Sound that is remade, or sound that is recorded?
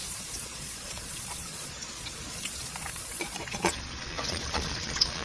remade